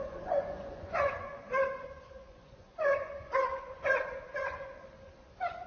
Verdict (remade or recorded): remade